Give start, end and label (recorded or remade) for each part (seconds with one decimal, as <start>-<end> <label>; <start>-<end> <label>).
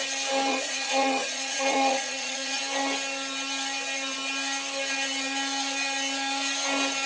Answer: 0.0-0.5 recorded; 0.5-2.6 remade; 2.6-7.1 recorded